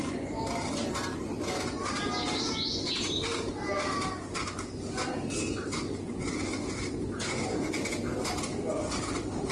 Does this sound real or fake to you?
real